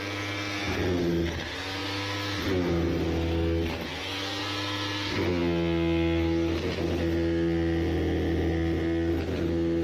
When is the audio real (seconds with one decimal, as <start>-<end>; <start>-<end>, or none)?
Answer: 0.0-9.8